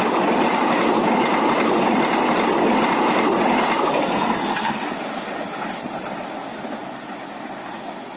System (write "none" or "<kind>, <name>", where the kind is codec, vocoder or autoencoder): none